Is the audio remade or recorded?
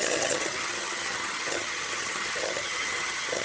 remade